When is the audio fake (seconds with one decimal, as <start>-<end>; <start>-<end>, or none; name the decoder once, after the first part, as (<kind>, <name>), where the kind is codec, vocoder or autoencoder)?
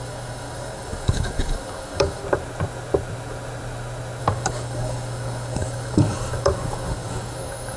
0.0-2.2 (codec, DAC); 4.2-7.8